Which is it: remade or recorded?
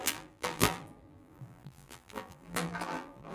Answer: remade